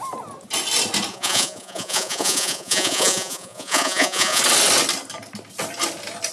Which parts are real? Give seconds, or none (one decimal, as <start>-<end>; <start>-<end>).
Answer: 0.0-1.1; 4.4-6.3